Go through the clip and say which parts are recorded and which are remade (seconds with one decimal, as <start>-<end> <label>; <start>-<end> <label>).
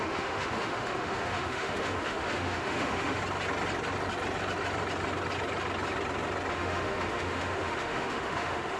0.0-3.2 remade; 3.2-6.5 recorded; 6.5-8.8 remade